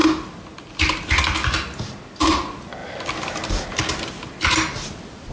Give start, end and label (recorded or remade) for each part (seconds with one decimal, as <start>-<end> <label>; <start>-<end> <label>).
0.0-5.3 recorded